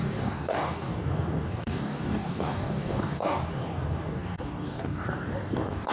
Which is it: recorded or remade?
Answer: remade